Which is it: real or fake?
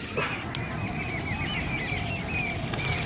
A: real